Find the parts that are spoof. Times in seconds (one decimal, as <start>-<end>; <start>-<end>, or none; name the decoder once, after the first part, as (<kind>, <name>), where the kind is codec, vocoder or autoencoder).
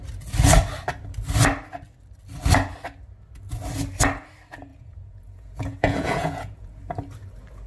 4.7-6.8 (vocoder, Vocos)